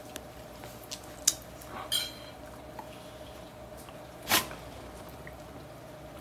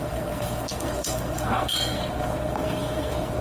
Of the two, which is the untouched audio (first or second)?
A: first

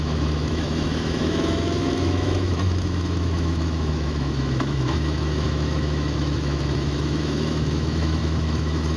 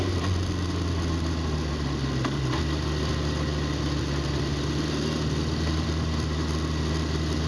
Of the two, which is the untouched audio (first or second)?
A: second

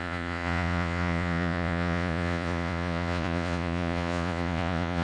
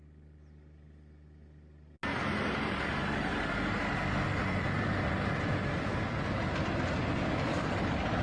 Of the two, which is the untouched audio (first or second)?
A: second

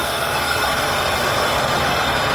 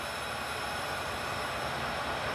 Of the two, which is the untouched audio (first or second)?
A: second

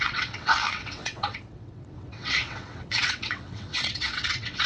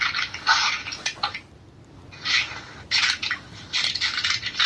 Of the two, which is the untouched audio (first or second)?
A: second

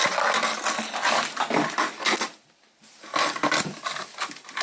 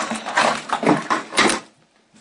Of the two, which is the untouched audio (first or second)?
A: first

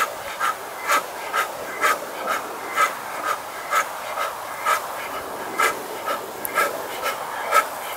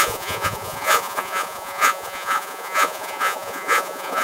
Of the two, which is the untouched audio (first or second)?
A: first